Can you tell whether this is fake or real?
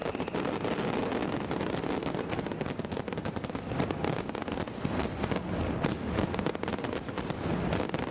real